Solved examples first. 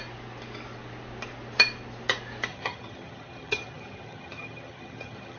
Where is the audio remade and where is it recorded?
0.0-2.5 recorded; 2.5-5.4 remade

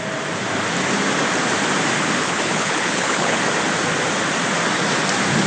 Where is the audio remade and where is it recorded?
0.0-2.2 recorded; 2.2-3.4 remade; 3.4-5.5 recorded

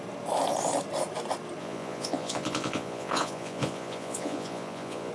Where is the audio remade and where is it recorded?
0.0-1.6 recorded; 1.6-5.1 remade

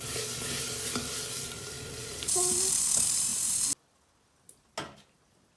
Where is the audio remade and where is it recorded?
0.0-2.0 recorded; 2.0-2.8 remade; 2.8-5.6 recorded

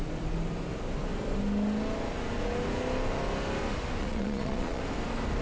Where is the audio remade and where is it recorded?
0.0-4.0 recorded; 4.0-4.8 remade; 4.8-5.4 recorded